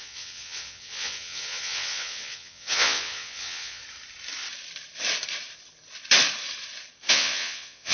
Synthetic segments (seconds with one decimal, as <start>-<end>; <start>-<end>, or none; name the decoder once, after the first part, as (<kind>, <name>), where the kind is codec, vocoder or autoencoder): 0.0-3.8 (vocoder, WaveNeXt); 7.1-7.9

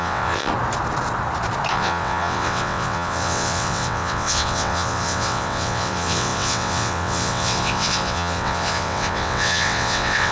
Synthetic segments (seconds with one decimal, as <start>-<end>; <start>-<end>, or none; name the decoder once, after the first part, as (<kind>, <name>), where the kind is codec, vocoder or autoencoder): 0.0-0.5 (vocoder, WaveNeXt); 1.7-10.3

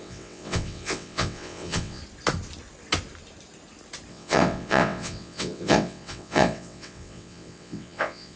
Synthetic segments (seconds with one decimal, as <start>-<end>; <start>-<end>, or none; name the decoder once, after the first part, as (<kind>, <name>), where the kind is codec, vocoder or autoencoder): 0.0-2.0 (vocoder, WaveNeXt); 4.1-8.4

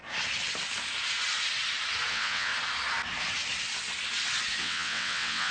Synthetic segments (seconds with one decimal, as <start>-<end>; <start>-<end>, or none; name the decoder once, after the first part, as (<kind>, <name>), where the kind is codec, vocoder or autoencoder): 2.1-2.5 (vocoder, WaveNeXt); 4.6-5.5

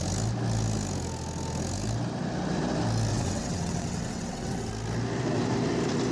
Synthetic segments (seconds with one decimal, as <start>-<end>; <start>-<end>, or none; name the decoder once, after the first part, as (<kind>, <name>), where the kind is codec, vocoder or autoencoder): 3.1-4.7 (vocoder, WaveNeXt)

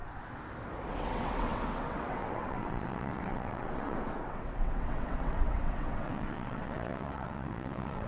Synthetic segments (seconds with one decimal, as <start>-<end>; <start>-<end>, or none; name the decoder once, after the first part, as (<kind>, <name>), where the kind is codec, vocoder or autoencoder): 0.9-8.1 (vocoder, WaveNeXt)

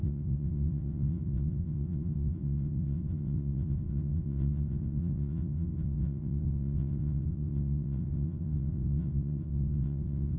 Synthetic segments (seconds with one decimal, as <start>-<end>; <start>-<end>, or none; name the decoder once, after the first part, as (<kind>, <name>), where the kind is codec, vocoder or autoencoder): 0.0-10.4 (vocoder, WaveNeXt)